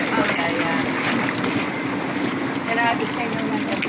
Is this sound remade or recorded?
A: recorded